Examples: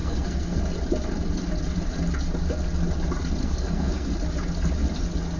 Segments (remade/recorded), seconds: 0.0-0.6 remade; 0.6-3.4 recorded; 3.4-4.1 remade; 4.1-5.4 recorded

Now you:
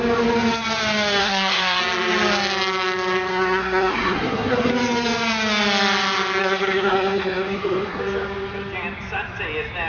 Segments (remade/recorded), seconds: 0.0-1.2 recorded; 1.2-1.8 remade; 1.8-3.3 recorded; 3.3-4.7 remade; 4.7-6.4 recorded; 6.4-8.0 remade; 8.0-9.9 recorded

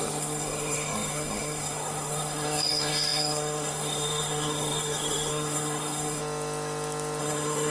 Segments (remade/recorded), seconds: 0.0-6.2 remade; 6.2-7.2 recorded; 7.2-7.7 remade

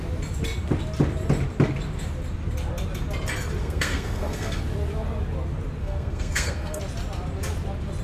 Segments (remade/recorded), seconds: 0.0-3.6 recorded; 3.6-4.6 remade; 4.6-5.8 recorded; 5.8-6.8 remade; 6.8-8.0 recorded